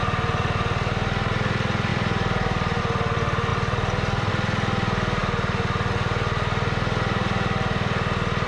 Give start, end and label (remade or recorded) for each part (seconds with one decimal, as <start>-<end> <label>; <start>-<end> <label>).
0.0-1.9 recorded; 1.9-2.8 remade; 2.8-3.5 recorded; 3.5-4.3 remade; 4.3-8.5 recorded